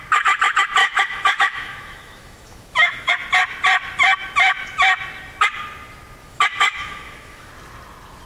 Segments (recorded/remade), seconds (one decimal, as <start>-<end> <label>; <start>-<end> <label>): 0.0-0.8 recorded; 0.8-3.1 remade; 3.1-6.2 recorded; 6.2-7.5 remade; 7.5-8.3 recorded